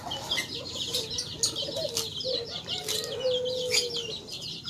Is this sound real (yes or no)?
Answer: yes